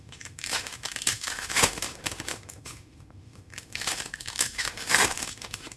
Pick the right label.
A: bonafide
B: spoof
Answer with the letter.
B